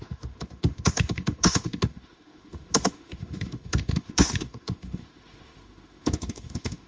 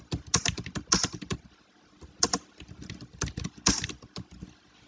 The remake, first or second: first